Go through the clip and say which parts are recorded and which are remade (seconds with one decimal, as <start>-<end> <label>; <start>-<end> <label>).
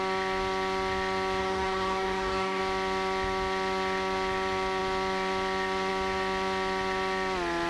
0.0-1.4 recorded; 1.4-2.6 remade; 2.6-7.7 recorded